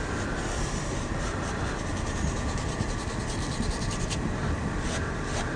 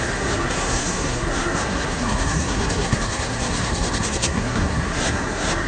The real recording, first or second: first